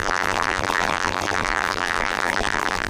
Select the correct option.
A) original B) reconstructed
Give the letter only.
B